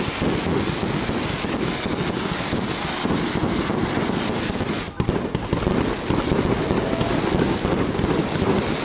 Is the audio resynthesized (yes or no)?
no